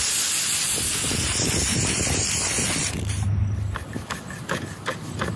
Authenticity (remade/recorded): recorded